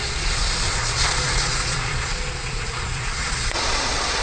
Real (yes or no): no